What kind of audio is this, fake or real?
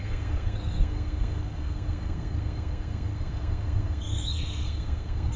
fake